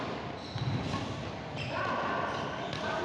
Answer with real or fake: real